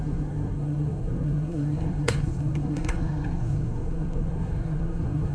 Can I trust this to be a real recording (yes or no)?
no